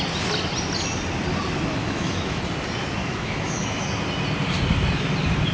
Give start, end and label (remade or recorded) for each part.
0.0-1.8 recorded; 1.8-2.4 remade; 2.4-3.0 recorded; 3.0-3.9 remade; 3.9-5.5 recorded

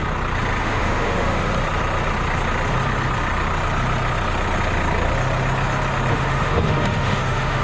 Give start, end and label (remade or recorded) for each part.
0.0-0.6 recorded; 0.6-1.5 remade; 1.5-6.1 recorded; 6.1-7.6 remade

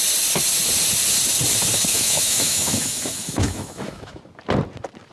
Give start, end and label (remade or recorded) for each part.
0.0-1.9 recorded; 1.9-4.2 remade; 4.2-5.1 recorded

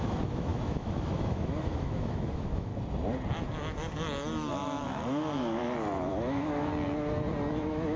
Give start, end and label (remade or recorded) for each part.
0.0-2.7 remade; 2.7-4.5 recorded; 4.5-5.6 remade; 5.6-6.1 recorded; 6.1-6.7 remade; 6.7-7.5 recorded; 7.5-8.0 remade